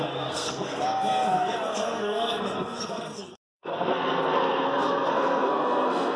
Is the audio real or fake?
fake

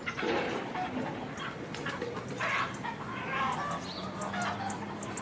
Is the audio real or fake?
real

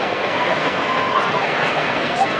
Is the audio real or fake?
fake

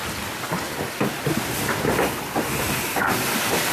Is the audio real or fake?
real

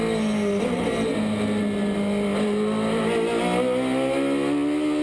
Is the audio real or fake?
real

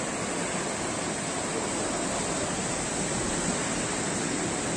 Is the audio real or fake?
real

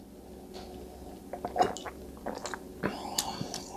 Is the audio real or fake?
real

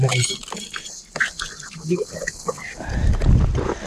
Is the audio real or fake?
real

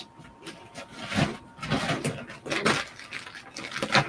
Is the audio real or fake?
real